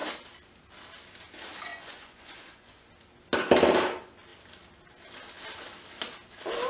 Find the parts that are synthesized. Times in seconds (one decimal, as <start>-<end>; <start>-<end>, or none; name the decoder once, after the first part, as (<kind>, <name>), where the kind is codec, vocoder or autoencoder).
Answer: 1.7-2.9 (vocoder, Vocos)